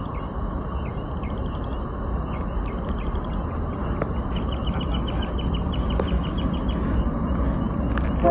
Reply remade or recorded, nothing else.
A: recorded